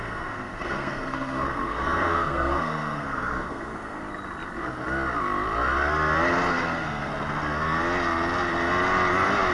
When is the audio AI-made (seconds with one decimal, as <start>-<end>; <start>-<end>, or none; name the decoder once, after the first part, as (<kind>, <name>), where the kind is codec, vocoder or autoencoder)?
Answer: 0.0-4.0 (codec, SNAC); 6.5-7.1